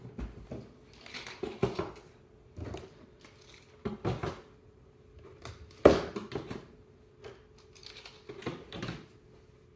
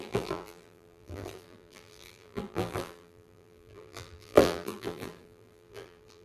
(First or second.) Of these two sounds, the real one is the first